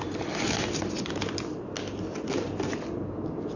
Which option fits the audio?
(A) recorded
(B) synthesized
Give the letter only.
A